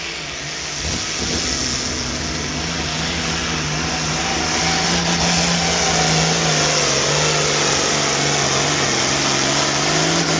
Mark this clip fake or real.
real